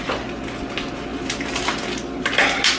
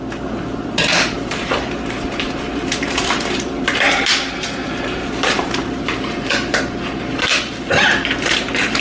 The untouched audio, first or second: first